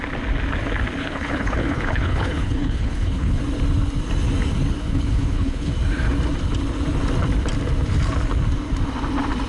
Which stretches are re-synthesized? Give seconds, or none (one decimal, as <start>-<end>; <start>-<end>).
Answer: 1.0-3.4; 4.8-5.7